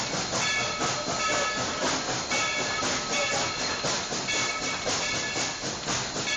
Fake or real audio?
real